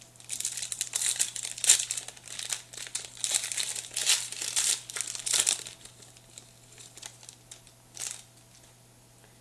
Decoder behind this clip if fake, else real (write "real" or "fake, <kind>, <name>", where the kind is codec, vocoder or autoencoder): real